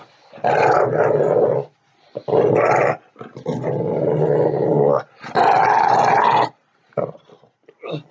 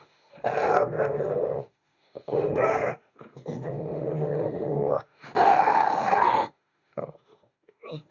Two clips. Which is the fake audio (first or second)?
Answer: second